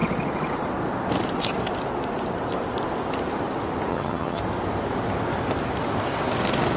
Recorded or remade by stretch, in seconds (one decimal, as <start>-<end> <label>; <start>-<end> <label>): 0.0-3.9 recorded; 3.9-4.4 remade; 4.4-6.8 recorded